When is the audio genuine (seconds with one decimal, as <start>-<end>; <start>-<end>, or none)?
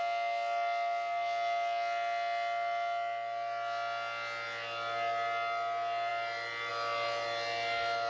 0.0-8.1